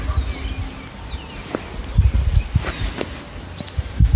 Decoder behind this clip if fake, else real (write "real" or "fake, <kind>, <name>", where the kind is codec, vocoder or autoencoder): real